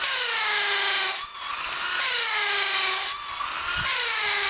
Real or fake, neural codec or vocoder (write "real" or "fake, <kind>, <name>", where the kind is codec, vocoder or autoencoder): real